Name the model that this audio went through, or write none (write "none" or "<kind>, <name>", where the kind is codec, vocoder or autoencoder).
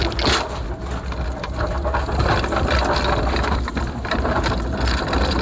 none